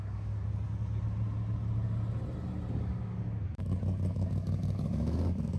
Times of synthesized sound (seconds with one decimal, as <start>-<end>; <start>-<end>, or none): 0.0-0.4; 2.7-5.6